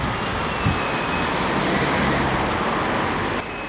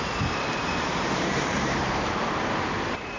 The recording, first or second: first